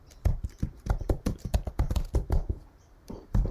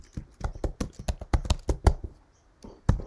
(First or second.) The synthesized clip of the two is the first